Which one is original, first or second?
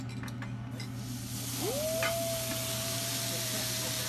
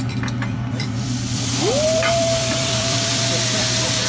first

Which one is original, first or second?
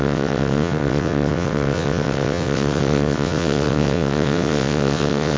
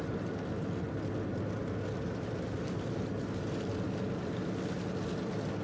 second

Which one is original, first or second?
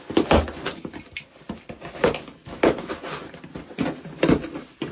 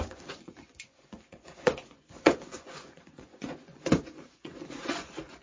first